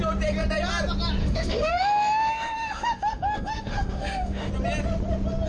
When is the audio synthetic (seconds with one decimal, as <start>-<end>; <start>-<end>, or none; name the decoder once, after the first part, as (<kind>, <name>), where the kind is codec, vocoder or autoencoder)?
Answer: 1.2-4.5 (autoencoder, DAC-VAE)